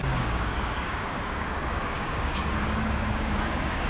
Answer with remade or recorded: remade